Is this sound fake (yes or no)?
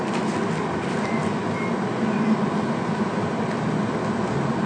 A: no